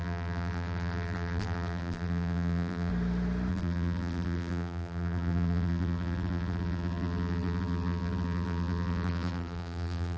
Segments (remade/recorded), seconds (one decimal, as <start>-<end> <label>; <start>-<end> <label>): 0.0-2.9 remade; 2.9-3.5 recorded; 3.5-10.2 remade